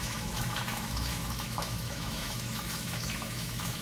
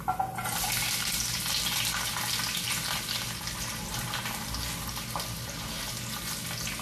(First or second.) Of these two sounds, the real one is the second